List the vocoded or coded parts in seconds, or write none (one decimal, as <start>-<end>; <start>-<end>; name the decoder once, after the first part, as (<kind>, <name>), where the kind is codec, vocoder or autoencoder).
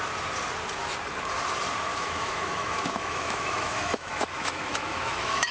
1.9-5.5 (autoencoder, DAC-VAE)